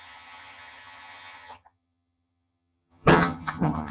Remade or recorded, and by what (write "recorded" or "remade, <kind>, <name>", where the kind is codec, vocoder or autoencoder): remade, vocoder, HiFi-GAN